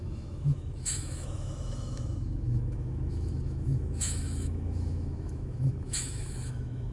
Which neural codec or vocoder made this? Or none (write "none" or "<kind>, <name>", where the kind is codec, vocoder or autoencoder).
autoencoder, DAC-VAE